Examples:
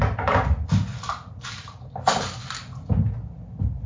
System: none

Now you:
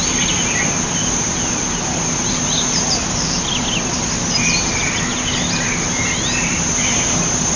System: none